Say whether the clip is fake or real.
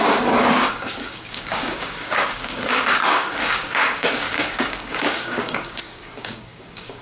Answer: fake